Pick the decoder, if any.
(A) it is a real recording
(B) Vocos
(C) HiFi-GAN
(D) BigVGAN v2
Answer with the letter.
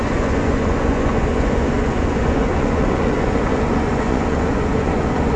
B